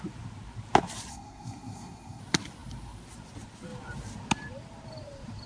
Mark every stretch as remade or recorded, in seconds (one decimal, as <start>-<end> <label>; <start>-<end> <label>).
0.0-1.1 recorded; 1.1-2.2 remade; 2.2-5.5 recorded